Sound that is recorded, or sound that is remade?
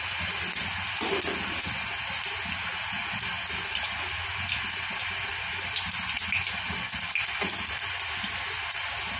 recorded